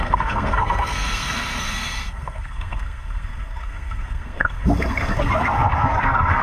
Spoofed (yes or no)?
yes